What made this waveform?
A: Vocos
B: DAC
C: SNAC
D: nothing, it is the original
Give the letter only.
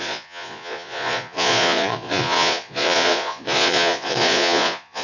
A